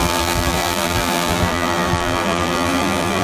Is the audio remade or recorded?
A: remade